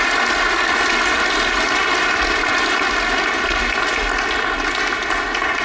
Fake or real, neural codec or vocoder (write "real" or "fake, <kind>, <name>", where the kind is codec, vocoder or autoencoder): real